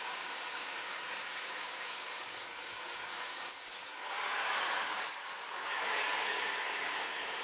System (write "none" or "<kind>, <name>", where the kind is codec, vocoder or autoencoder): codec, DAC